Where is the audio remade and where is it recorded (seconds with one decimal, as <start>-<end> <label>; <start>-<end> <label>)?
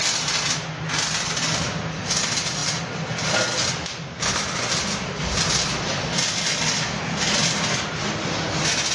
0.0-8.9 recorded